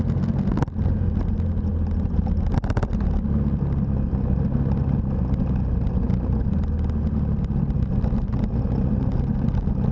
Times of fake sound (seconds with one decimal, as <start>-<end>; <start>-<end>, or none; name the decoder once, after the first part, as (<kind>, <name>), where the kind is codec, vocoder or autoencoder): none